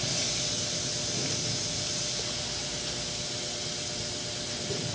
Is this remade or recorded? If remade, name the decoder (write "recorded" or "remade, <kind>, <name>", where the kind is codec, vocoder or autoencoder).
recorded